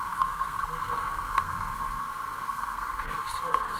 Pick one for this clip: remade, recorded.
remade